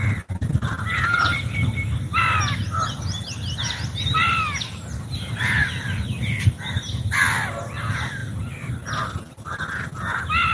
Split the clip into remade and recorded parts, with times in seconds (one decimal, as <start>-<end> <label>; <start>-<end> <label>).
0.0-2.1 recorded; 2.1-3.0 remade; 3.0-10.5 recorded